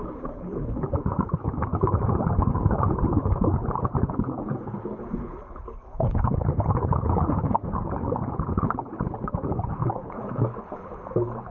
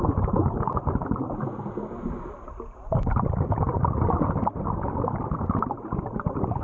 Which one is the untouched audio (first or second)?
second